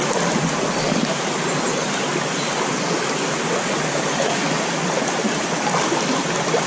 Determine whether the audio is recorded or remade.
recorded